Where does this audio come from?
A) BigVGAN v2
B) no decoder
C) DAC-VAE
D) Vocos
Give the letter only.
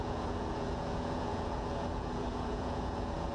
D